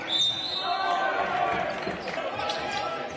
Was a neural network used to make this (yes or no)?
no